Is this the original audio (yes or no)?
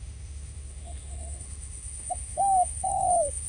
no